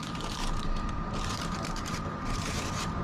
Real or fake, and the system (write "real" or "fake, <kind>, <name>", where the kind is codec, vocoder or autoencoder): fake, vocoder, BigVGAN v2